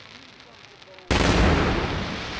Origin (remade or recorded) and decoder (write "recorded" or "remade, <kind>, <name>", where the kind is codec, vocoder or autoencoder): recorded